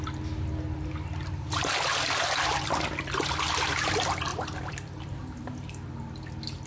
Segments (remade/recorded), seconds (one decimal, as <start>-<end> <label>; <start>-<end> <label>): 0.0-4.3 recorded; 4.3-5.5 remade; 5.5-6.7 recorded